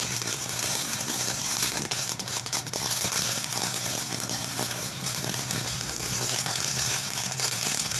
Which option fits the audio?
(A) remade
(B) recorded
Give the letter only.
A